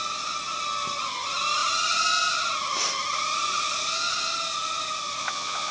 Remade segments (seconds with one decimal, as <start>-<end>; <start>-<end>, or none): 5.2-5.7